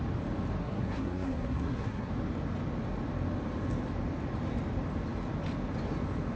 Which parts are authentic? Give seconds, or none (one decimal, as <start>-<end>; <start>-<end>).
0.0-0.6; 2.1-6.4